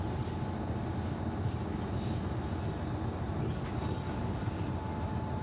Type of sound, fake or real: real